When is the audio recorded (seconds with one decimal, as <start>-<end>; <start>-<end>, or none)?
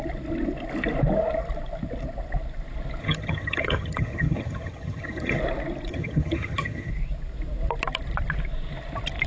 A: 0.0-3.0; 5.4-5.9; 6.9-9.3